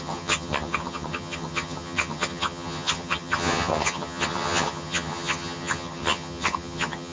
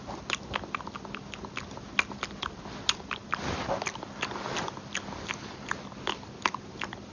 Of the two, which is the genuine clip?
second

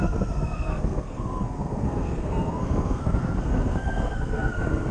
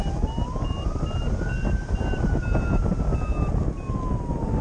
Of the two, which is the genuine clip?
second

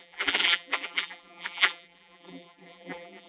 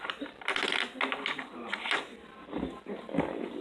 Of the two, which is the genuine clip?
second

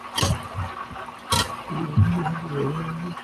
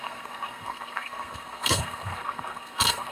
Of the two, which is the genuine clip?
first